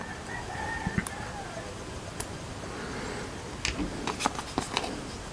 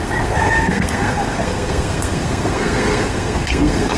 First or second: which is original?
first